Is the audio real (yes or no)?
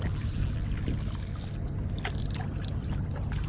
yes